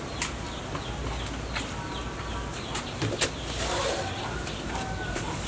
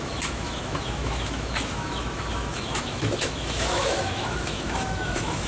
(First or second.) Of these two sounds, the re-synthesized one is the second